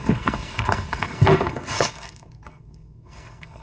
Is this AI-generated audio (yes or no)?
yes